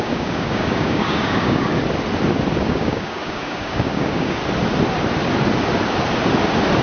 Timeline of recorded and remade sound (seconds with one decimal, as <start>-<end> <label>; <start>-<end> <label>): 0.0-1.7 remade; 1.7-2.6 recorded; 2.6-4.4 remade; 4.4-6.8 recorded